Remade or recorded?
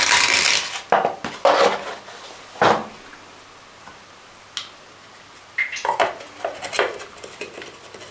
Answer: recorded